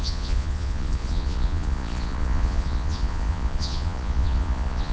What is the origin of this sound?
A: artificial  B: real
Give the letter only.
A